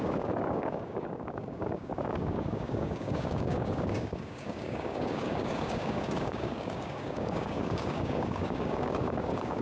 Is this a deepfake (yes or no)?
yes